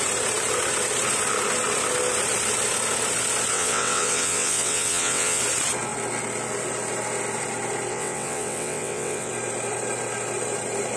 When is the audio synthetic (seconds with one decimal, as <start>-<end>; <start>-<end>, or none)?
3.5-5.4; 7.9-9.3